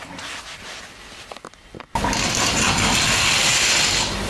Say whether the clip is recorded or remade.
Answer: recorded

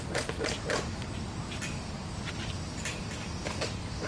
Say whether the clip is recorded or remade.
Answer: remade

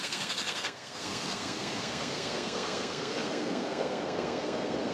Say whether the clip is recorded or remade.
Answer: remade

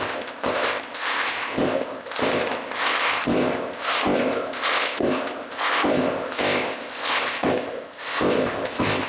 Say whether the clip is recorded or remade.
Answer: remade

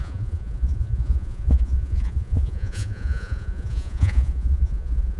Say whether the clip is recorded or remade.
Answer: remade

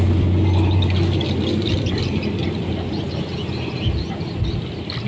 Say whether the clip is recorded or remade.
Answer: recorded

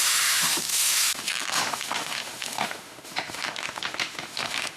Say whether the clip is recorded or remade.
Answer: remade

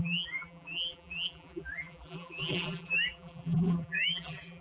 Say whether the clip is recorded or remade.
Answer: remade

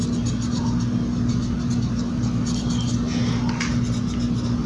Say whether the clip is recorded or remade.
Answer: recorded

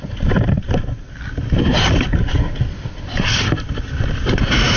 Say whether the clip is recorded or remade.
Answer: recorded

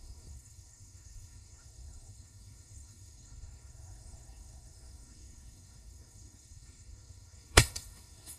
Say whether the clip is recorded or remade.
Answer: remade